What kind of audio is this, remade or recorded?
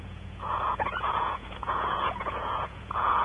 remade